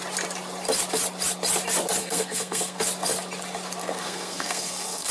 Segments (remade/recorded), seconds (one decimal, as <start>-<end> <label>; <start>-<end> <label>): 0.0-2.0 recorded; 2.0-2.8 remade; 2.8-3.8 recorded; 3.8-5.1 remade